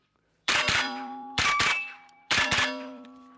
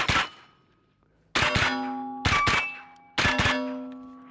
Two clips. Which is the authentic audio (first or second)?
second